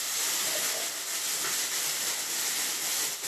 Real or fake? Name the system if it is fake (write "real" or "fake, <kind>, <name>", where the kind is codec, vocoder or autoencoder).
real